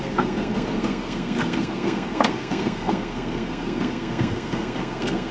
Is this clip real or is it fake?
fake